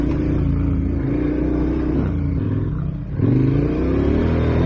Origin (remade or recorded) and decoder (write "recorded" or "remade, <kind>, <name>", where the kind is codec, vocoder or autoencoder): recorded